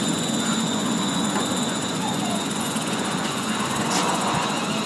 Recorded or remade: remade